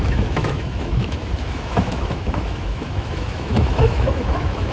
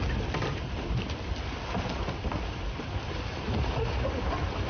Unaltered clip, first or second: second